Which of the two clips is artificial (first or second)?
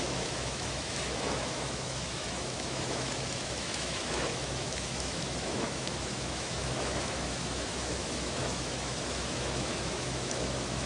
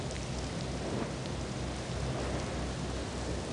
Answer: first